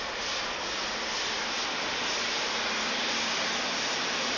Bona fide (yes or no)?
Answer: no